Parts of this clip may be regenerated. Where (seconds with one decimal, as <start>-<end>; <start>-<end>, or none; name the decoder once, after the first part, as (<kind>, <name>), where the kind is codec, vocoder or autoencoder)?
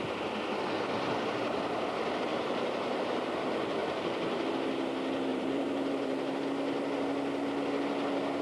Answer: 2.3-3.4 (vocoder, BigVGAN v2); 3.8-4.5; 5.3-6.4